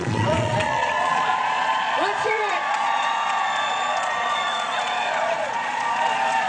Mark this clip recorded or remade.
remade